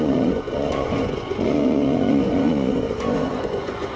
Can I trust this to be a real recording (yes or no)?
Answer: no